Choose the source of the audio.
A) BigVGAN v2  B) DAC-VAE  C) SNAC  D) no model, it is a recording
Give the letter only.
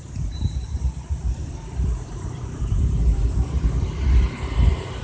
A